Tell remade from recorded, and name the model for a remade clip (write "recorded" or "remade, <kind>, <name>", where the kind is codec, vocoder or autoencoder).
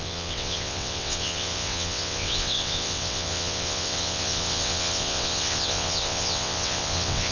remade, vocoder, WaveNeXt